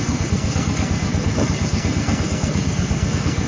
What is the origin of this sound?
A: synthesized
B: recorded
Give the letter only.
A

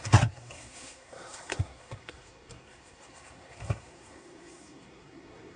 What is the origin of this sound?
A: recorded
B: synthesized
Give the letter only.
B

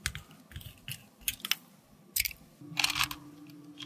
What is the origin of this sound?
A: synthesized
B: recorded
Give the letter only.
B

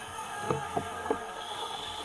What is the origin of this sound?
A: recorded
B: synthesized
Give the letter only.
B